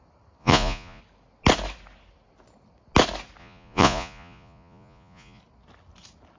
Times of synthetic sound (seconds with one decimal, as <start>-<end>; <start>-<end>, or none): 0.4-1.0; 3.4-5.4